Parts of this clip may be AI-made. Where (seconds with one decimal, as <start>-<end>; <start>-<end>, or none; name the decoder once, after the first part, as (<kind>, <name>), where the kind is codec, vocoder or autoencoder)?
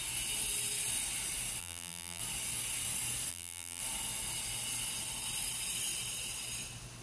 1.6-2.2 (vocoder, BigVGAN v2); 3.3-3.8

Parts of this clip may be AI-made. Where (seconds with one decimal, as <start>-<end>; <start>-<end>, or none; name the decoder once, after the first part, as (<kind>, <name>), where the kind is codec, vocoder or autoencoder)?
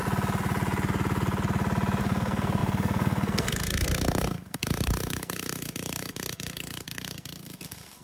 2.0-8.0 (codec, SNAC)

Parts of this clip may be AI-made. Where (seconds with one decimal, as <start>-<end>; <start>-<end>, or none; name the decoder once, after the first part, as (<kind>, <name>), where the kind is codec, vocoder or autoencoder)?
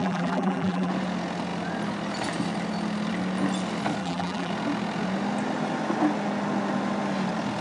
0.0-0.9 (vocoder, BigVGAN v2); 4.0-4.5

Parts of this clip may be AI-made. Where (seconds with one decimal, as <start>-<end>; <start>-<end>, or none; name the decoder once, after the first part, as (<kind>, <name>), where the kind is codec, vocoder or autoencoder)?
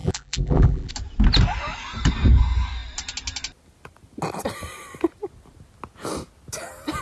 0.0-0.9 (vocoder, BigVGAN v2)